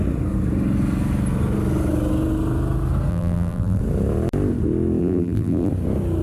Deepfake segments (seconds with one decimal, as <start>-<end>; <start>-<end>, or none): 3.1-3.8; 5.0-5.7